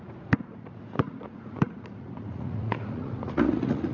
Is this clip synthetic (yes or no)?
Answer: yes